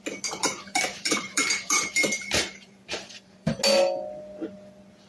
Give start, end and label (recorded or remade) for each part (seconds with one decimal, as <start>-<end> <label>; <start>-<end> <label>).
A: 0.0-0.4 recorded; 0.4-3.5 remade; 3.5-5.1 recorded